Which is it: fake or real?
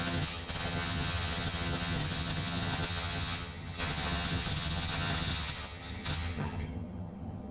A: fake